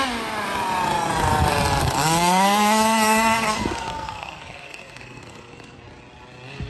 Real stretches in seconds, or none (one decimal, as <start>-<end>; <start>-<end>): 0.0-1.8; 5.8-6.7